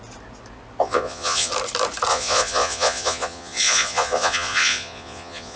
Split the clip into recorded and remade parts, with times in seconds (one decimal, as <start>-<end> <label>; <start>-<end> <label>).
0.0-0.8 recorded; 0.8-1.5 remade; 1.5-2.1 recorded; 2.1-5.6 remade